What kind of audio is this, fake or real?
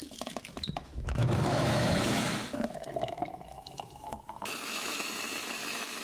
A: fake